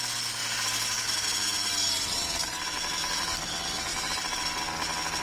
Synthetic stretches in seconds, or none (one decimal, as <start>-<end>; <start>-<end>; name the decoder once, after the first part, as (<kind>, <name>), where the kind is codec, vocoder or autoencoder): 0.4-3.5 (vocoder, BigVGAN v2); 3.9-4.6